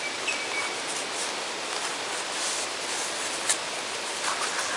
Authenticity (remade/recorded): recorded